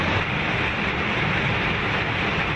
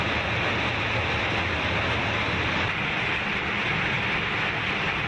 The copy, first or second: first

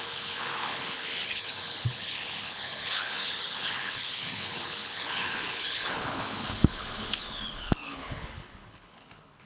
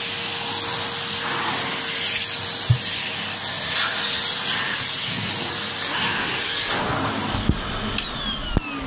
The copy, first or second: first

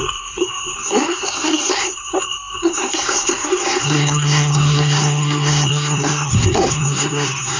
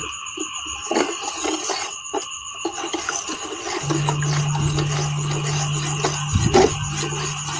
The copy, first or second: first